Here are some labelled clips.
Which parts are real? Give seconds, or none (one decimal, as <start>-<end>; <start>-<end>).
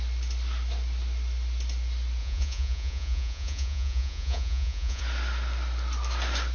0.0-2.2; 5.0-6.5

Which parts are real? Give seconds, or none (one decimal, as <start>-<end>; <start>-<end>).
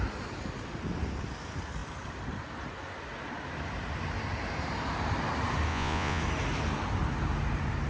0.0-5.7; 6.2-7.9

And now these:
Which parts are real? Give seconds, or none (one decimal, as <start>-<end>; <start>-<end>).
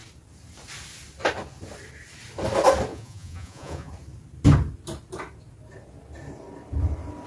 0.0-2.9; 3.9-7.3